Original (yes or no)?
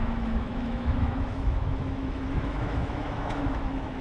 no